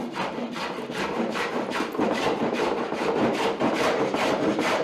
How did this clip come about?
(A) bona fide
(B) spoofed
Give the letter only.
B